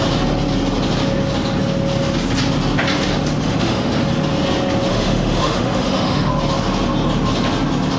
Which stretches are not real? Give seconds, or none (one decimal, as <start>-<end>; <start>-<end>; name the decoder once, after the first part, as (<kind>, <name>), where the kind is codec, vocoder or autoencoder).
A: 3.4-4.0 (autoencoder, DAC-VAE); 4.9-6.3